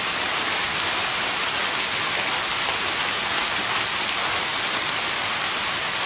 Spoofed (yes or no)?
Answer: no